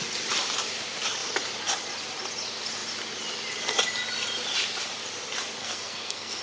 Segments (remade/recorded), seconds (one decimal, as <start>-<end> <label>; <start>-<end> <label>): 0.0-5.6 recorded; 5.6-6.4 remade